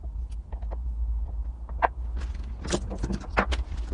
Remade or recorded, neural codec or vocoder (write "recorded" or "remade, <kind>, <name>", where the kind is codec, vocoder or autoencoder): recorded